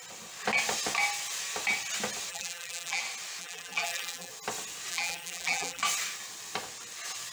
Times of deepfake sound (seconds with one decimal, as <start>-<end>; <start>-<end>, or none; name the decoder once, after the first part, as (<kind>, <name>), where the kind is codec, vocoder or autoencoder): 2.3-3.0 (vocoder, BigVGAN v2); 3.4-4.3; 4.9-5.8